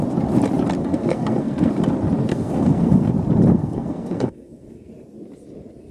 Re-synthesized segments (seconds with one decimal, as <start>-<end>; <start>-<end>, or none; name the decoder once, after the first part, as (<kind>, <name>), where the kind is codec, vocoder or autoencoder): 0.8-1.7 (codec, SNAC); 2.3-3.1; 3.5-4.9